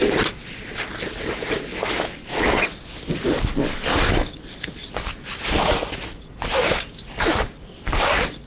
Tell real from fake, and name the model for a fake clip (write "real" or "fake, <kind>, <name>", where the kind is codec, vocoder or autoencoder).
real